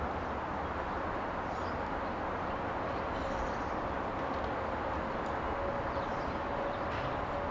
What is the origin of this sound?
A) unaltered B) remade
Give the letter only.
A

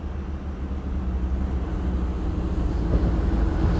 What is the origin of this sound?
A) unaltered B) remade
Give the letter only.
A